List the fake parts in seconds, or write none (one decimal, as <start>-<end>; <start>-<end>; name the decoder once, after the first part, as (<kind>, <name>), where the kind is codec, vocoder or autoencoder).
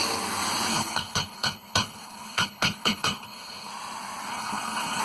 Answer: 0.7-3.7 (codec, HILCodec); 4.3-5.0